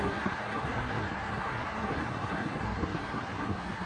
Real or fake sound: fake